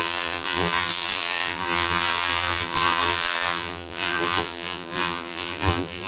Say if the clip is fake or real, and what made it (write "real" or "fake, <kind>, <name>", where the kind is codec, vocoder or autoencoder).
fake, vocoder, BigVGAN v2